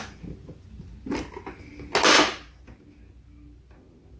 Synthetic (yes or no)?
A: no